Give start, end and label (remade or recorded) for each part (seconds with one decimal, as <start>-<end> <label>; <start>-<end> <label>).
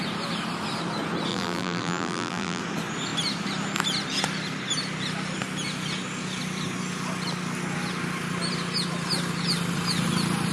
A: 0.0-1.3 recorded; 1.3-2.6 remade; 2.6-10.5 recorded